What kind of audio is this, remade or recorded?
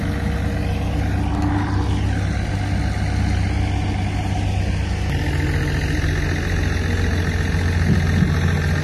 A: recorded